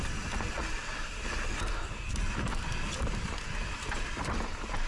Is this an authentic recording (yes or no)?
yes